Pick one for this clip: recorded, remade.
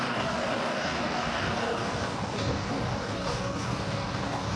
remade